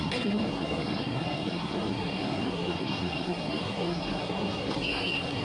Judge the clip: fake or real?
fake